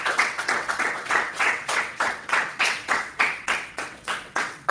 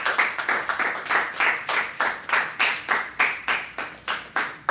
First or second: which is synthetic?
first